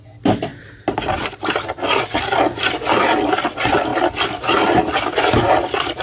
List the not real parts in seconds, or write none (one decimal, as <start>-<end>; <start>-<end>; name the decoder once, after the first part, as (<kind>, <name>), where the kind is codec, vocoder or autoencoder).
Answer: 0.5-2.0 (vocoder, BigVGAN v2); 3.9-4.9